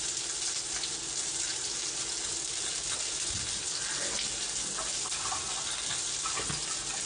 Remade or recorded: recorded